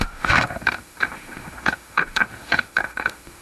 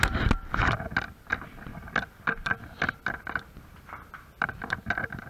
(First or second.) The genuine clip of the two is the second